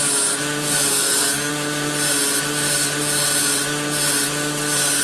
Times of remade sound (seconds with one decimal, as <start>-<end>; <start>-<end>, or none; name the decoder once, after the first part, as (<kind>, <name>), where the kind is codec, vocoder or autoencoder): 0.9-1.5 (codec, SNAC)